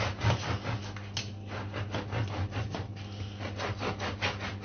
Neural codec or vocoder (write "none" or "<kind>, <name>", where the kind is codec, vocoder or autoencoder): none